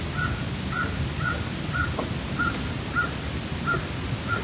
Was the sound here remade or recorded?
recorded